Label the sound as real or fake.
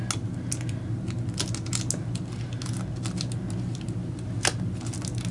real